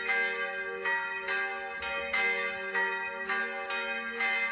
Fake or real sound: real